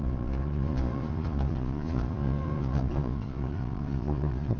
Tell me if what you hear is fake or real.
fake